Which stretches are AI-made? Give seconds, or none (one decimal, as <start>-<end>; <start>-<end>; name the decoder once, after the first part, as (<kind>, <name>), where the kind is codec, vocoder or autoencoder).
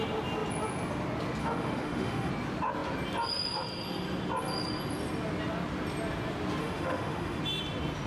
1.4-2.3 (autoencoder, DAC-VAE); 6.6-7.4